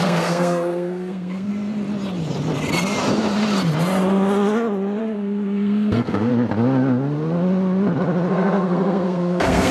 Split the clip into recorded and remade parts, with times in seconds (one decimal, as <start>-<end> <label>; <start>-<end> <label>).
0.0-1.5 remade; 1.5-5.0 recorded; 5.0-6.3 remade; 6.3-8.3 recorded; 8.3-9.7 remade

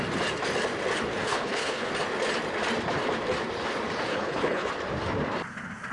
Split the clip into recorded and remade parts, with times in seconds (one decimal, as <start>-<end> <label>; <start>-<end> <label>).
0.0-1.2 recorded; 1.2-1.9 remade; 1.9-4.1 recorded; 4.1-4.7 remade; 4.7-5.9 recorded